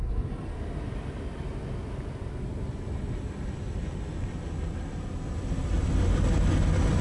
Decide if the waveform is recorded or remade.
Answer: recorded